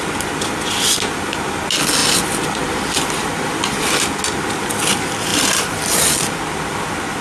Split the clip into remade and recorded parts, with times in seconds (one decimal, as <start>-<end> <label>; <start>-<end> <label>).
0.0-2.0 recorded; 2.0-4.0 remade; 4.0-5.3 recorded; 5.3-6.4 remade; 6.4-7.2 recorded